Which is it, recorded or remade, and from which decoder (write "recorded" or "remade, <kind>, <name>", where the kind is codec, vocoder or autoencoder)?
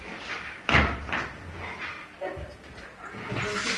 recorded